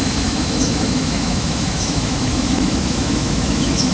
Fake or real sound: fake